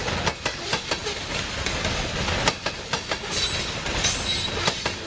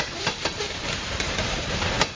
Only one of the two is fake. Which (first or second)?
second